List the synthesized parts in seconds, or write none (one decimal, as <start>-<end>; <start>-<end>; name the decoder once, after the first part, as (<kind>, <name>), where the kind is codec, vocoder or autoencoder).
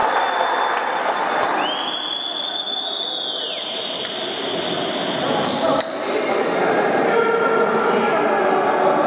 none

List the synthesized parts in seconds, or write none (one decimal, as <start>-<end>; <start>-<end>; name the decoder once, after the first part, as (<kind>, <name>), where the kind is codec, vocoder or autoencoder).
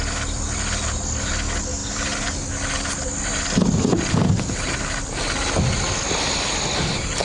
none